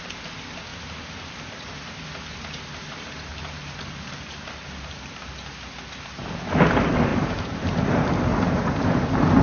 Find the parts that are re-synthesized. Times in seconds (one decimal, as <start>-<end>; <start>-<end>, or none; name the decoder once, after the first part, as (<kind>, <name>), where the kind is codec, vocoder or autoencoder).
0.7-2.0 (vocoder, BigVGAN v2); 3.3-5.3; 7.1-7.8; 8.3-8.8